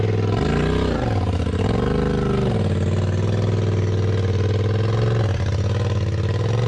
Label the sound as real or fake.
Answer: real